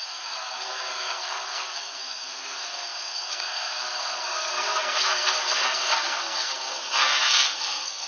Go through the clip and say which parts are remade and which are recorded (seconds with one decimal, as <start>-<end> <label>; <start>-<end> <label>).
0.0-8.1 remade